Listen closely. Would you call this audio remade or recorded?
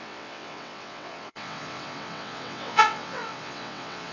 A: remade